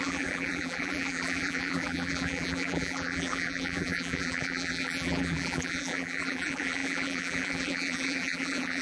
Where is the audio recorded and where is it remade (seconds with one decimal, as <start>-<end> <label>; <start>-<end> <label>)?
0.0-8.8 remade